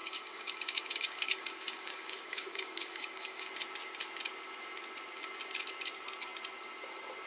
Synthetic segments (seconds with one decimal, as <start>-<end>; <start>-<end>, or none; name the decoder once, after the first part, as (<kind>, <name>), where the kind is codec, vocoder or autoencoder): 0.0-3.5 (codec, DAC)